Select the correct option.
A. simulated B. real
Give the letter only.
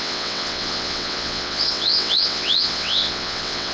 A